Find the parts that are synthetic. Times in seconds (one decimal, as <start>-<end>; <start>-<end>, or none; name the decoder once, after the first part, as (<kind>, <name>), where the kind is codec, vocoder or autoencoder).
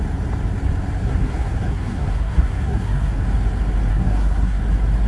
1.0-3.2 (codec, SNAC); 3.9-4.6